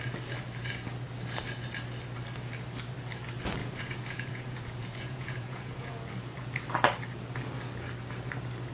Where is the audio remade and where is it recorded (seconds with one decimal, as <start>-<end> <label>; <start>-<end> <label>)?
0.0-3.6 recorded; 3.6-6.1 remade; 6.1-8.7 recorded